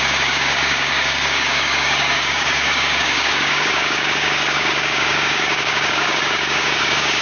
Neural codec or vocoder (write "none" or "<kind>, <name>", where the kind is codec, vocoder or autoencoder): codec, DAC